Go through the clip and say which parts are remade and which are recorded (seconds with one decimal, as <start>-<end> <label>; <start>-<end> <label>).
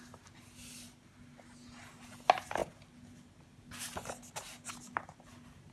0.0-5.7 recorded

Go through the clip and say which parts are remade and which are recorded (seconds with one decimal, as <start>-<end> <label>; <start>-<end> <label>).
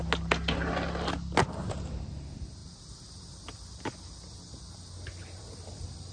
0.0-6.1 recorded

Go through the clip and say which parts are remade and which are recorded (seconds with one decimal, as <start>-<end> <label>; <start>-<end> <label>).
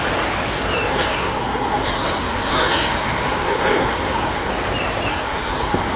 0.0-0.9 recorded; 0.9-4.5 remade; 4.5-5.1 recorded; 5.1-6.0 remade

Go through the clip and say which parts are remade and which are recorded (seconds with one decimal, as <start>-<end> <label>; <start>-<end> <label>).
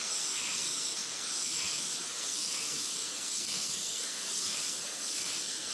0.0-5.7 remade